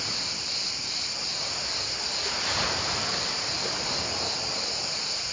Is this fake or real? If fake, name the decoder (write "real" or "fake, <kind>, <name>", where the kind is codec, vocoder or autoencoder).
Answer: real